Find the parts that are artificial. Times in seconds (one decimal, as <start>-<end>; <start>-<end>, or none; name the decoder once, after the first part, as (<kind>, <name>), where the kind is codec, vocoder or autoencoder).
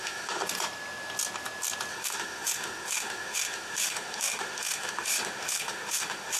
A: 0.0-0.4 (autoencoder, DAC-VAE); 1.9-6.4